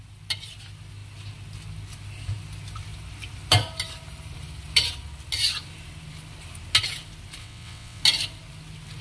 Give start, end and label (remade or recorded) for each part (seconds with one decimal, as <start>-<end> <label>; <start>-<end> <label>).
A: 0.0-7.4 recorded; 7.4-8.0 remade; 8.0-9.0 recorded